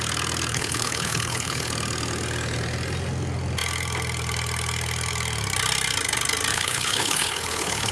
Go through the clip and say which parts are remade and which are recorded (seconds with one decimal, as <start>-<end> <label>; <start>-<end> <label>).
0.0-0.5 recorded; 0.5-1.7 remade; 1.7-6.5 recorded; 6.5-7.9 remade